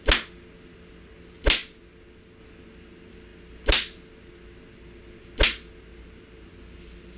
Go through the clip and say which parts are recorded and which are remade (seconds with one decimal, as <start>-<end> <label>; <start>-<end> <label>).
0.0-7.2 recorded